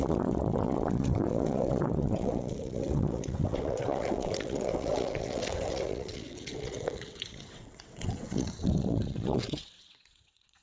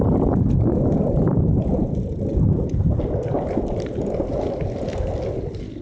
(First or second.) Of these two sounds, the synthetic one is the first